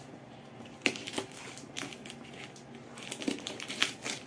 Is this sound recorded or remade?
recorded